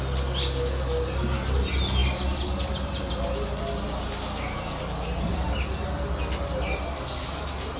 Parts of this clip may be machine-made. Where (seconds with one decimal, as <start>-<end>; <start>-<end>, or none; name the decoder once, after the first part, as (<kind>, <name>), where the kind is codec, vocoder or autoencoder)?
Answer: none